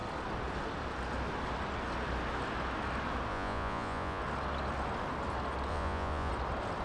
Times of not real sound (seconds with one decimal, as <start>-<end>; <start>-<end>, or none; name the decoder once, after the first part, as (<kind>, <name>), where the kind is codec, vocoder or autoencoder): 3.3-4.2 (vocoder, Vocos); 5.7-6.3